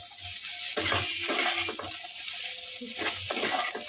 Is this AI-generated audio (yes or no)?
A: no